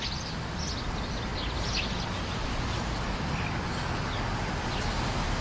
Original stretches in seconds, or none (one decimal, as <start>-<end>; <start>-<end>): 0.0-5.4